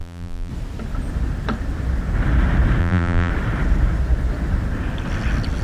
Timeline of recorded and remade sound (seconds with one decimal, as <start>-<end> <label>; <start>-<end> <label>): 0.0-0.5 remade; 0.5-2.8 recorded; 2.8-3.3 remade; 3.3-5.6 recorded